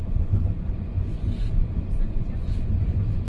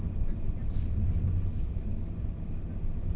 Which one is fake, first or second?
first